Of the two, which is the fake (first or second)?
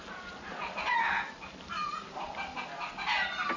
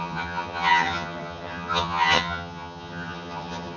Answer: second